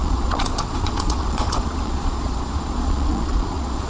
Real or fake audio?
fake